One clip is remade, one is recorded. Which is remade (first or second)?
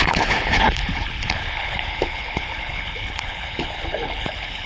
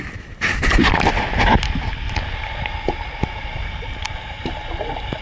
first